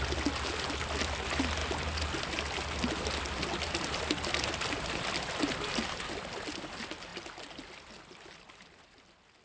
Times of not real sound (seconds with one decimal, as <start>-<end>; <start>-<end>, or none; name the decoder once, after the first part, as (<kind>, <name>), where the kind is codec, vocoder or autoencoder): none